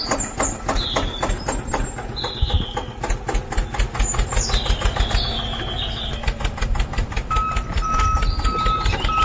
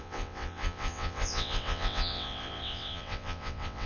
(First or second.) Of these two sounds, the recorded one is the first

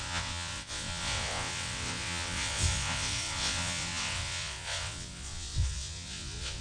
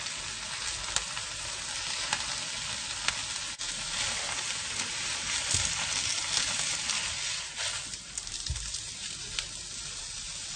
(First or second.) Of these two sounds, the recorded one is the second